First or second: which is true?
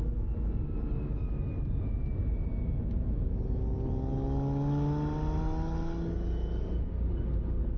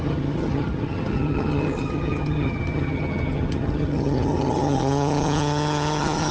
first